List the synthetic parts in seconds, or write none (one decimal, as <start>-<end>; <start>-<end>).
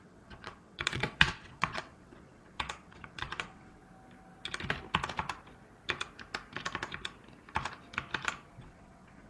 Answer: 0.0-3.8; 8.6-9.3